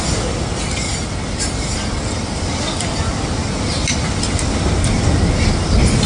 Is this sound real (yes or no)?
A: yes